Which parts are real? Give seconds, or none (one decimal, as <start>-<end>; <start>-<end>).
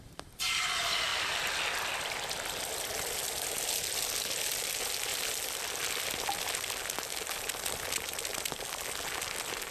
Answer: 0.0-1.1; 2.9-5.1; 6.7-9.7